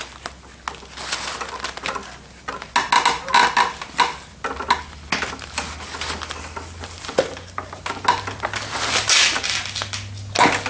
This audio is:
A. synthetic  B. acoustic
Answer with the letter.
B